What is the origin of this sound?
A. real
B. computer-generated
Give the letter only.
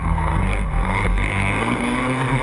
B